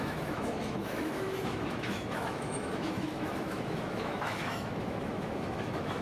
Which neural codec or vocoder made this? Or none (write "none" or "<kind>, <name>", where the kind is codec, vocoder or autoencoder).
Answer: autoencoder, DAC-VAE